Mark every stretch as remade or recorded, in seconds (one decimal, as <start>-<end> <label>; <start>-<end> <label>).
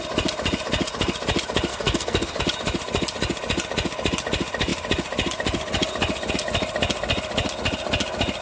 0.0-1.7 recorded; 1.7-2.4 remade; 2.4-8.4 recorded